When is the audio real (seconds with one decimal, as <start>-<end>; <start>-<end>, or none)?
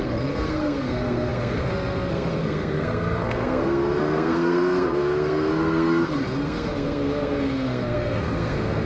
none